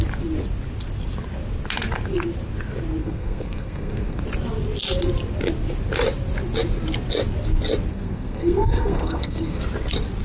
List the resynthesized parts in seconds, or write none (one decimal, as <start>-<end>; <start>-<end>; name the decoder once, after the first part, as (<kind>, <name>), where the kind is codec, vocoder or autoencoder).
3.0-4.2 (codec, SNAC); 7.9-9.6

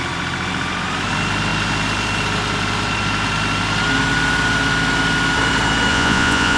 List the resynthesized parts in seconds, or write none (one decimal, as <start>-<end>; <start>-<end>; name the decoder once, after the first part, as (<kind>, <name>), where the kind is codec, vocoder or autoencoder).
5.9-6.6 (vocoder, Vocos)

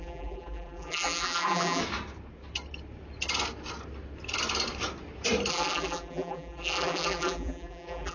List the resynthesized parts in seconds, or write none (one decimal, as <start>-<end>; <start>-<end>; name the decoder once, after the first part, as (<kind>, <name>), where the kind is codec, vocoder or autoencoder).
0.0-1.8 (vocoder, BigVGAN v2); 5.5-8.1